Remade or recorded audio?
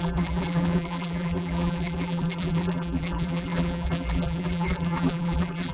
remade